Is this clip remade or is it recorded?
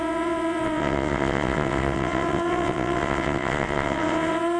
remade